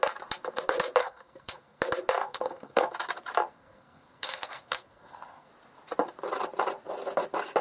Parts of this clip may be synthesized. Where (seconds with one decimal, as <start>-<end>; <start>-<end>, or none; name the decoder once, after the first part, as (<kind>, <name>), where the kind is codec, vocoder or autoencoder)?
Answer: 1.0-1.8 (codec, SNAC); 2.2-2.9; 3.5-5.5